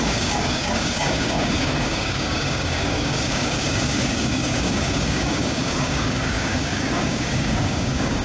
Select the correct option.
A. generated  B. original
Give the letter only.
A